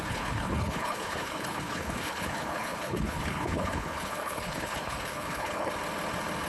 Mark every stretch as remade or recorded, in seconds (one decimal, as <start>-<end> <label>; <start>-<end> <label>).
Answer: 0.0-5.7 remade; 5.7-6.5 recorded